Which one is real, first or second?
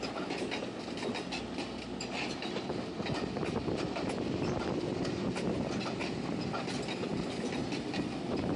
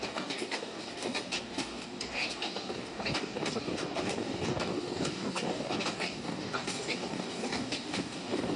first